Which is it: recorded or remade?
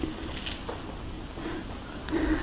recorded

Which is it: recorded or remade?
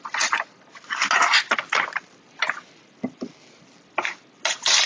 recorded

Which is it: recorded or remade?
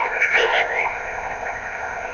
remade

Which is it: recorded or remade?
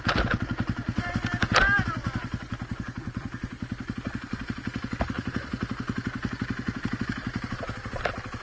recorded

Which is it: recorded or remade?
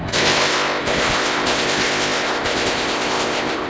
remade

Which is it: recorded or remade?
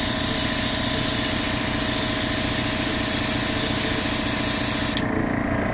recorded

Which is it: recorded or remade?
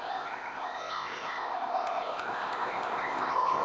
remade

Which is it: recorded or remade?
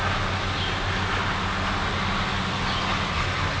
recorded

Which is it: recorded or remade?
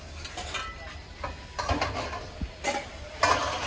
recorded